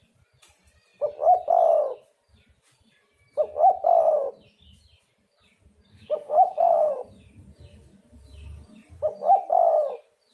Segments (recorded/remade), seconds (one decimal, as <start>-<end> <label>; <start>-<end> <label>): 0.0-5.9 recorded; 5.9-6.9 remade; 6.9-10.3 recorded